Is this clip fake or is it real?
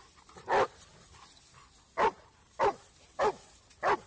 real